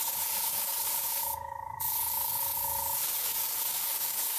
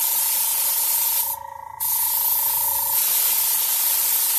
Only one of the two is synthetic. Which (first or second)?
first